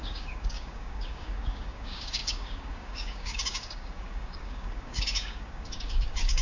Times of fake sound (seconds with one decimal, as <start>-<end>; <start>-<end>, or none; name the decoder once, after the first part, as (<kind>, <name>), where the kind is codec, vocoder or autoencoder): 0.0-6.4 (codec, DAC)